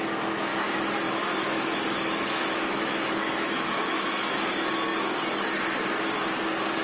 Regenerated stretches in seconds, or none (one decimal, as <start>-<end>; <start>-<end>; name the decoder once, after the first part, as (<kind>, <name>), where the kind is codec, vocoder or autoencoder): 0.5-4.5 (autoencoder, DAC-VAE)